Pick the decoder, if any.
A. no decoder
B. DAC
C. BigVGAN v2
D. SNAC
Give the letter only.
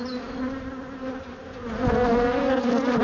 A